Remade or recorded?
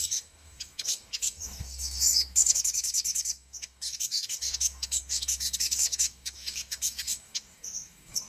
remade